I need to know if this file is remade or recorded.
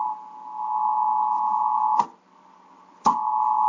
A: recorded